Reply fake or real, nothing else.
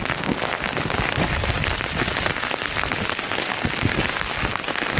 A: real